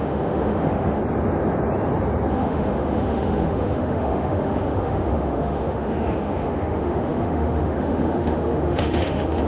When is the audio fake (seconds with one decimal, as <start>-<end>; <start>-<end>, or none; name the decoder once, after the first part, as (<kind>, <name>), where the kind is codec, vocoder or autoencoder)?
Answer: 0.0-1.0 (autoencoder, DAC-VAE); 2.3-9.5